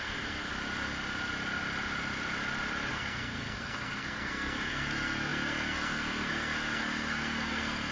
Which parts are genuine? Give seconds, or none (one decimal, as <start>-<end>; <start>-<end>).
0.5-2.9